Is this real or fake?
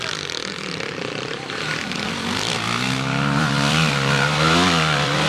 fake